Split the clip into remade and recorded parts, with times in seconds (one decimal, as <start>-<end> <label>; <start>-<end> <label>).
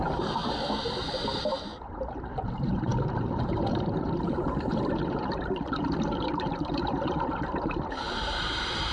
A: 0.0-0.4 remade; 0.4-1.9 recorded; 1.9-8.9 remade